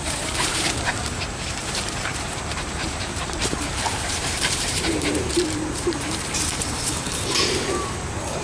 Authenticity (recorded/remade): remade